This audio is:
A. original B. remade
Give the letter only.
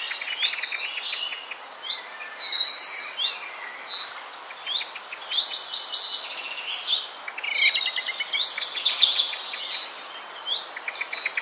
A